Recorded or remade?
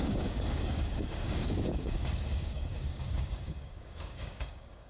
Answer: remade